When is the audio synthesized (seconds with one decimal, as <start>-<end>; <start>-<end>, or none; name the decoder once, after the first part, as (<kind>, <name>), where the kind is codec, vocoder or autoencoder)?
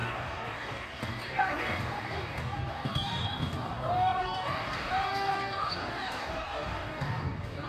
0.0-7.7 (codec, DAC)